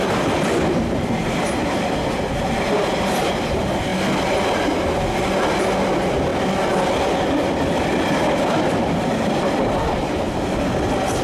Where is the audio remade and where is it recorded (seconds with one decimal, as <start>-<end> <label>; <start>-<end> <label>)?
0.0-11.2 recorded